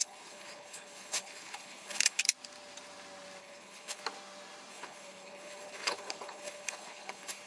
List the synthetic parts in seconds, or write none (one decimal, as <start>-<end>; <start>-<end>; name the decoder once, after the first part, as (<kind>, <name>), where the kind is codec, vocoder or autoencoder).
0.0-2.2 (codec, HILCodec); 3.4-4.0; 4.7-7.5

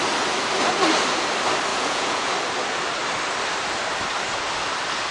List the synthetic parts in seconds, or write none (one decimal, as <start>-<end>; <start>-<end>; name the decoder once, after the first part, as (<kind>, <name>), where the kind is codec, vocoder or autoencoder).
1.7-2.3 (vocoder, Vocos)

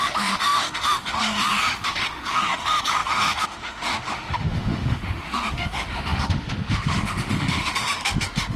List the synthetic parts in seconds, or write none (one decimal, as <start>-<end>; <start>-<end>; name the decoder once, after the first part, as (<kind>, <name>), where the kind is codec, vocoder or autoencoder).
0.0-8.6 (autoencoder, DAC-VAE)

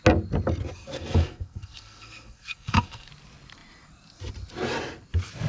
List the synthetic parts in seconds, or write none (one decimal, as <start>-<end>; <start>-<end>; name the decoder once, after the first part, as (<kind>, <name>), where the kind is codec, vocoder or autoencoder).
0.8-3.1 (codec, SNAC)

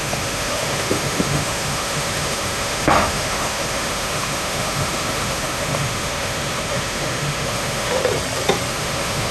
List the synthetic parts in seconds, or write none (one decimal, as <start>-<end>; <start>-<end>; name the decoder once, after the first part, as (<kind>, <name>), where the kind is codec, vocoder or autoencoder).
0.0-8.0 (autoencoder, DAC-VAE); 8.7-9.3

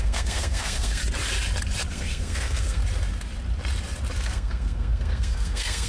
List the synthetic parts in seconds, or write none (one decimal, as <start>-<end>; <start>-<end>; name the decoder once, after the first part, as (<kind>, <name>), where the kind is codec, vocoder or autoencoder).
0.0-1.0 (codec, SNAC); 1.9-2.8; 4.2-5.9